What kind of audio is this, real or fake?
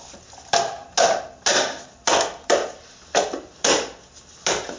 real